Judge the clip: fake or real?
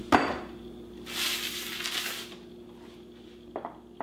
real